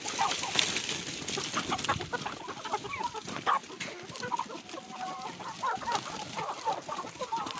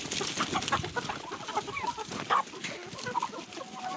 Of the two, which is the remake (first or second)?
first